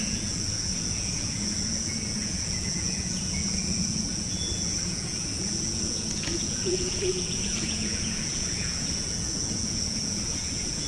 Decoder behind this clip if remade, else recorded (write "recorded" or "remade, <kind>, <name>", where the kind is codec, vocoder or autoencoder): remade, vocoder, Vocos